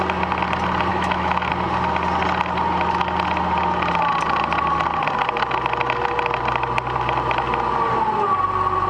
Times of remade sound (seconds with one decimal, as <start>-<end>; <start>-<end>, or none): 0.9-1.5

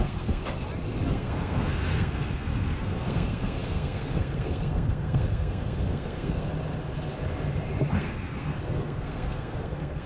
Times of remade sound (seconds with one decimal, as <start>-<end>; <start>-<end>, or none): 0.0-0.4; 1.1-6.5; 7.9-10.1

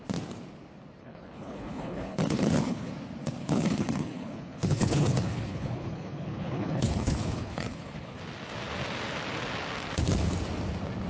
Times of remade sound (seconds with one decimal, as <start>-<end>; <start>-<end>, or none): 1.0-2.9; 3.4-8.2

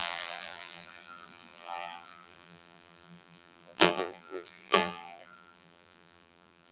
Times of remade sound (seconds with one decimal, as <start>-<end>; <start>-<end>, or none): 0.0-6.7

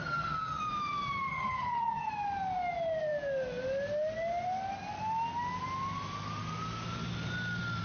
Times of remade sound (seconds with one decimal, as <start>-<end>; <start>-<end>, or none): 0.0-0.6; 1.3-2.1